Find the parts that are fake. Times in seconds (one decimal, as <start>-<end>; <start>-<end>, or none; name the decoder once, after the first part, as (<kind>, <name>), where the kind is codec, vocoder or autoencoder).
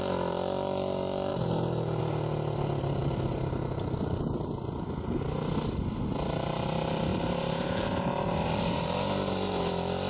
1.3-2.0 (vocoder, BigVGAN v2); 7.1-9.7